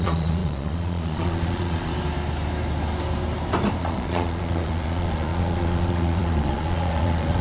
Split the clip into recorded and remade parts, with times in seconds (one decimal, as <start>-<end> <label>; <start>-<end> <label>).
0.0-1.9 remade; 1.9-3.8 recorded; 3.8-7.4 remade